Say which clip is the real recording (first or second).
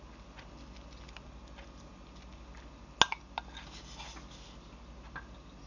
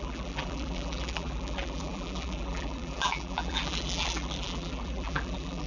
first